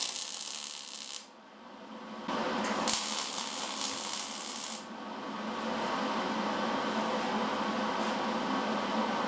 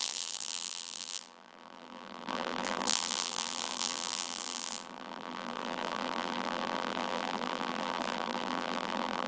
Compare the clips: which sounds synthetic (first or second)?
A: second